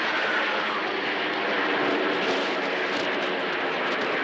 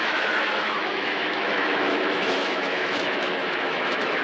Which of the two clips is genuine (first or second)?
first